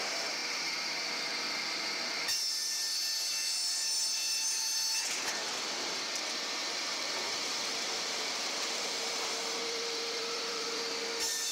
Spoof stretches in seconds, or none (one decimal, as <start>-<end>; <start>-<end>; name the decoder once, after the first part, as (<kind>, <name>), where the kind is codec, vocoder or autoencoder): 6.6-10.8 (vocoder, BigVGAN v2)